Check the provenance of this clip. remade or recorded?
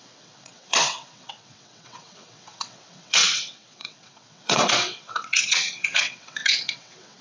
remade